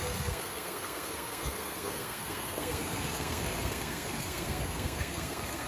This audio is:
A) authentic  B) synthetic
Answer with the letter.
B